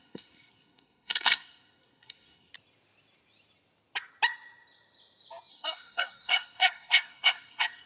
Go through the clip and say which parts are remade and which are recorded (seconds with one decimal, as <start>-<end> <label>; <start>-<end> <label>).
0.0-2.5 remade; 2.5-5.5 recorded; 5.5-7.9 remade